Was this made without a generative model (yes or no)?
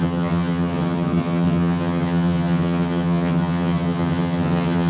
no